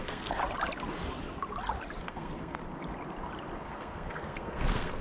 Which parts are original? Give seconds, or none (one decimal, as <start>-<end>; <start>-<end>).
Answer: 0.4-2.0; 2.6-3.6